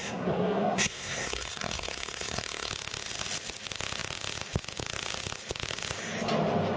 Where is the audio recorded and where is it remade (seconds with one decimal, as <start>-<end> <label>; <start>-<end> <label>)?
0.0-2.7 remade; 2.7-6.8 recorded